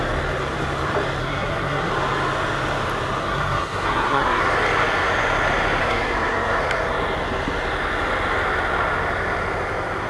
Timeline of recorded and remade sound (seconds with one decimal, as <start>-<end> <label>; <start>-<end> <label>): 0.0-1.2 recorded; 1.2-1.9 remade; 1.9-3.2 recorded; 3.2-4.4 remade; 4.4-5.8 recorded; 5.8-6.6 remade; 6.6-10.1 recorded